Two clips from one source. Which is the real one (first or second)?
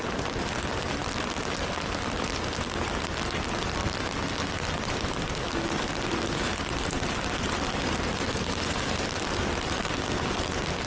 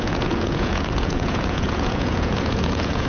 first